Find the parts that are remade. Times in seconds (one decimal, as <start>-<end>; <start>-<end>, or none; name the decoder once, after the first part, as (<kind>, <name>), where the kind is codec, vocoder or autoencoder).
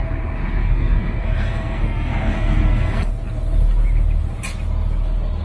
0.6-3.1 (codec, SNAC)